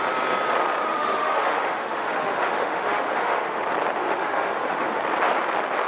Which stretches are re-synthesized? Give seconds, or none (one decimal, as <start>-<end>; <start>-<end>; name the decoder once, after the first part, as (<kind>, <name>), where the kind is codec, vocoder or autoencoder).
0.8-3.6 (autoencoder, DAC-VAE); 4.0-5.0